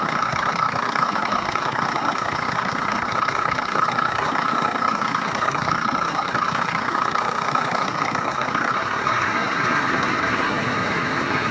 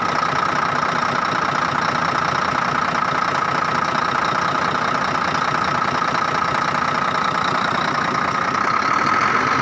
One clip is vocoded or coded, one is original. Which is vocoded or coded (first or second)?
first